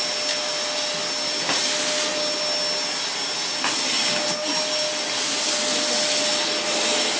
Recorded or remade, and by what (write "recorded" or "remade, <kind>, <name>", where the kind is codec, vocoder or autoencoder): recorded